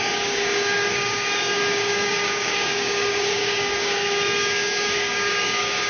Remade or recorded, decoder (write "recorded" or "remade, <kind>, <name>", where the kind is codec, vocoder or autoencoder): remade, codec, DAC